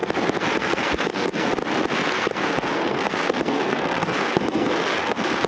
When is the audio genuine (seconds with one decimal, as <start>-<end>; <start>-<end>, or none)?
1.5-2.0